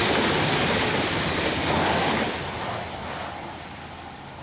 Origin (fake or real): real